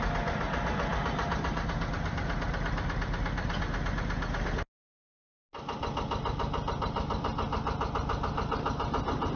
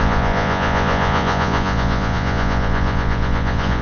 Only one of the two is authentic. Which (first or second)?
first